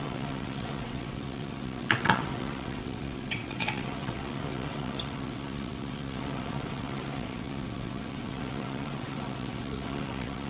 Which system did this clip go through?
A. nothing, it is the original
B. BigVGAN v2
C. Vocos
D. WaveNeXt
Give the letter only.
D